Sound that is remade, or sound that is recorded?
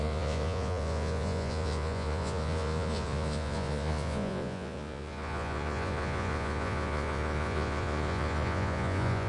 remade